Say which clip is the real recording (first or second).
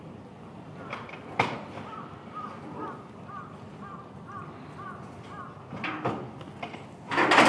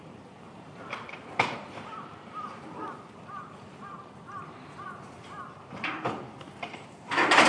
first